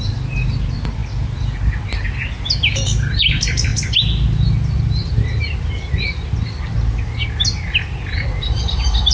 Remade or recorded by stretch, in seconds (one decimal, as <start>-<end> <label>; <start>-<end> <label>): 0.0-9.1 recorded